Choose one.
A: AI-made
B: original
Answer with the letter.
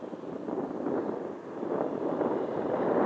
B